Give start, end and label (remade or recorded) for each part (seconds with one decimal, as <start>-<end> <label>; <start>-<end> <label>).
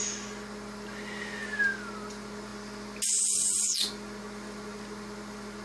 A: 0.0-5.6 recorded